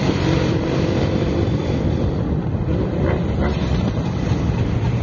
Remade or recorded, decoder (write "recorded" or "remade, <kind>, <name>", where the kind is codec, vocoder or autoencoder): remade, vocoder, BigVGAN v2